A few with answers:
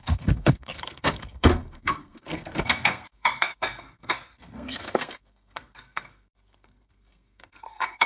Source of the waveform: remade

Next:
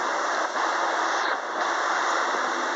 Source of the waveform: remade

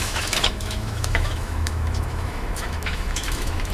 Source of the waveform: remade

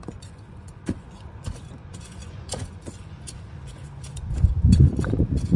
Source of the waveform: remade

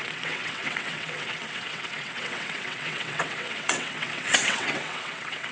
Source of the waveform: remade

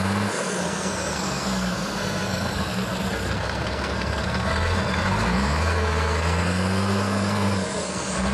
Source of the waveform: remade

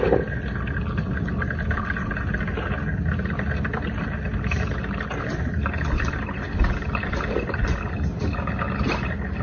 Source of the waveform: recorded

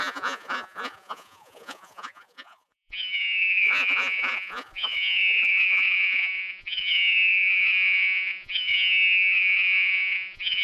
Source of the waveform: remade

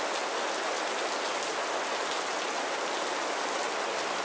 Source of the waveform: recorded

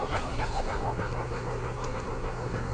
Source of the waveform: remade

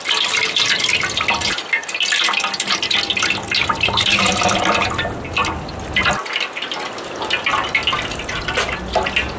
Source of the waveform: recorded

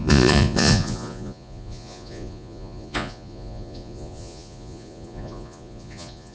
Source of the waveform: remade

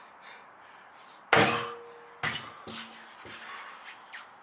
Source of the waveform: recorded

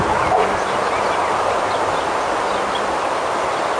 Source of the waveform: recorded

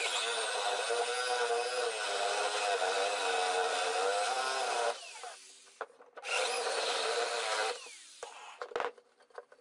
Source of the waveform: recorded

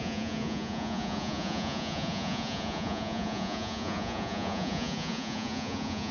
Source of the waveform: remade